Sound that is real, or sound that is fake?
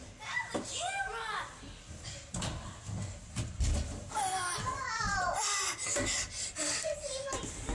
real